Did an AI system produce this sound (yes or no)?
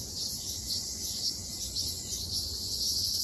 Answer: yes